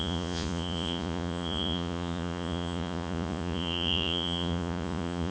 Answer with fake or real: fake